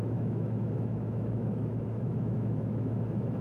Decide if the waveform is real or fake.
fake